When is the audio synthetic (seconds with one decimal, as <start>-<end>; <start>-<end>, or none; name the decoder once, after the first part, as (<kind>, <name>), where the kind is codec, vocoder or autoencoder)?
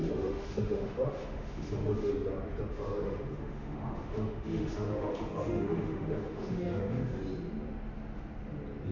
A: 0.0-2.1 (autoencoder, DAC-VAE); 2.7-7.2